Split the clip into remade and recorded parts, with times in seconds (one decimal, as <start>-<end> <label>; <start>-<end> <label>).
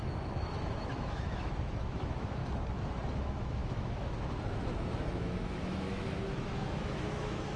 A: 0.0-2.4 remade; 2.4-3.1 recorded; 3.1-7.6 remade